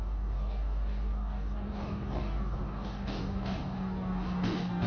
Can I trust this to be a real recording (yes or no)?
no